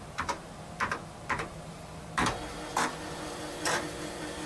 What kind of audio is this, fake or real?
real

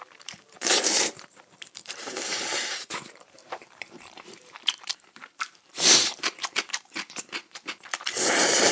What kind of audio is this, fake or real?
fake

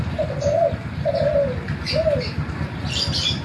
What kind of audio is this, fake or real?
real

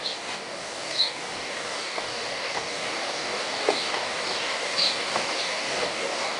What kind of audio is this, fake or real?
fake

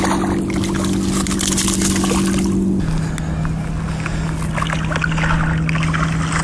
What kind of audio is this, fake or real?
real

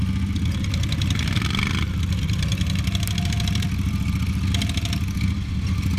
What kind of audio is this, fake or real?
real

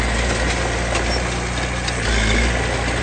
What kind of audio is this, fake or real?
real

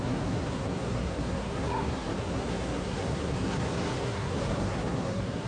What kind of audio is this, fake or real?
fake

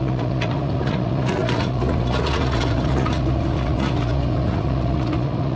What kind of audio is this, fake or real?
fake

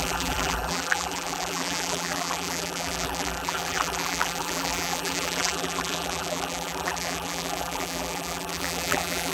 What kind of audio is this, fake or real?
fake